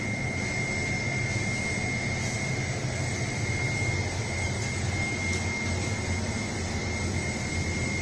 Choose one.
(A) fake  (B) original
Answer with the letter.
B